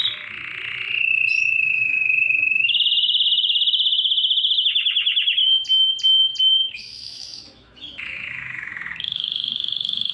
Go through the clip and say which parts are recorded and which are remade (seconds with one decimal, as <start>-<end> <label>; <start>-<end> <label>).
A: 0.0-1.4 recorded; 1.4-5.4 remade; 5.4-6.4 recorded; 6.4-10.1 remade